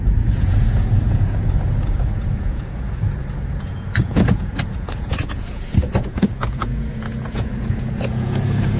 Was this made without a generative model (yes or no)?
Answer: no